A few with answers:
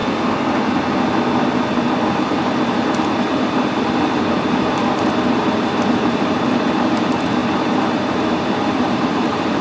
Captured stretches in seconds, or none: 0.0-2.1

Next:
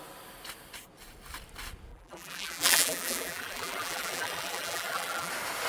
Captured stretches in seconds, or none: 0.0-1.9; 5.3-5.7

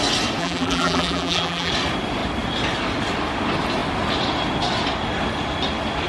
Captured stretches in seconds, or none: 0.0-0.4; 1.7-6.1

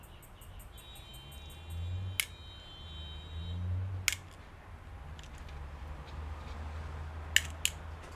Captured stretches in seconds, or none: 0.0-8.2

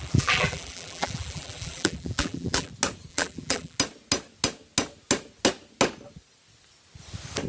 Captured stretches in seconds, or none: 2.7-3.1; 3.8-7.5

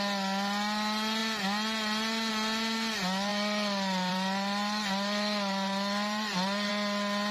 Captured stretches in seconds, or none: 0.0-3.3; 6.7-7.3